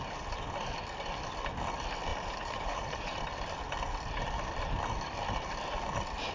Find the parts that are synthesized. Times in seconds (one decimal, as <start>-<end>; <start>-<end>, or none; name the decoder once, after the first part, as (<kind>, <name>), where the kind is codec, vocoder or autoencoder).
2.1-3.2 (vocoder, BigVGAN v2)